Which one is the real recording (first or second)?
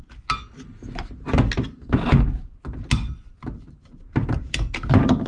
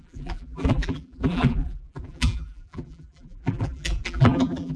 first